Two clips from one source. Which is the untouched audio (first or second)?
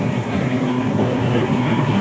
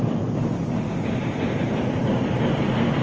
second